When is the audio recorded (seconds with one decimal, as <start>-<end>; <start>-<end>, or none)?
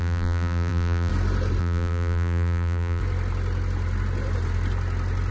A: 1.1-1.6; 3.0-5.3